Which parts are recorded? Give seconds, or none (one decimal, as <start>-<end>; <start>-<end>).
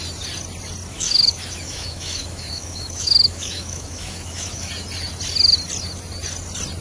0.0-0.9; 4.7-6.8